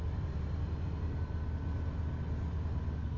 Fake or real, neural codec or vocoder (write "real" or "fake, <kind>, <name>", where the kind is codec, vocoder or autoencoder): real